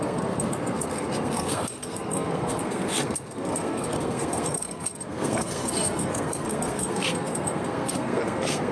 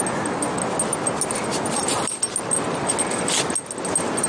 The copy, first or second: first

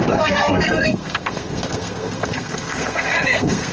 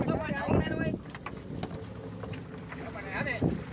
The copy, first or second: first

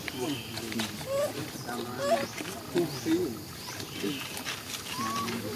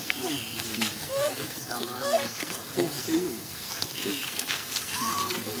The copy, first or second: second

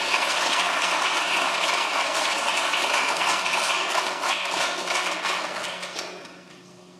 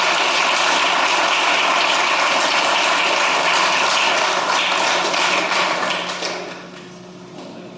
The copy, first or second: first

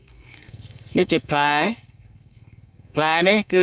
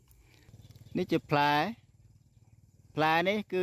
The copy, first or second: first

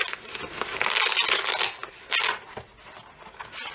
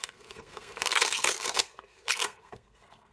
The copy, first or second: second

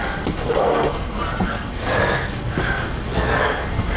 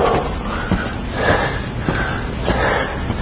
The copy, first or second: first